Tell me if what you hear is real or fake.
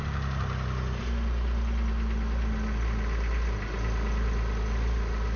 real